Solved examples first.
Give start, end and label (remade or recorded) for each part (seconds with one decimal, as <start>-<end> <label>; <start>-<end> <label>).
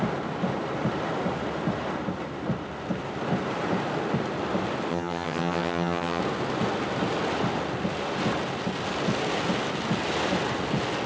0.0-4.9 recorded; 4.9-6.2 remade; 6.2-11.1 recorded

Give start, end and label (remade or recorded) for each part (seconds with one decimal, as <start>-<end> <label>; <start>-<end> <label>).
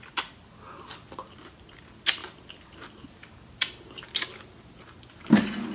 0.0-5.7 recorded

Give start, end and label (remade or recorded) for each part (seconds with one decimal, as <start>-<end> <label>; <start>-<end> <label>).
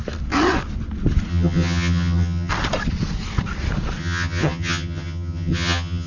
0.0-1.3 recorded; 1.3-2.5 remade; 2.5-4.0 recorded; 4.0-6.1 remade